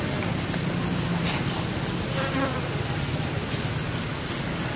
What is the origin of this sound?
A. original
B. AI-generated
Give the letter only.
A